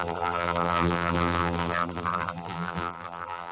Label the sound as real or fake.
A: fake